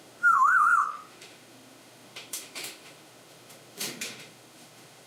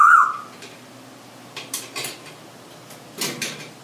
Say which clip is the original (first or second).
second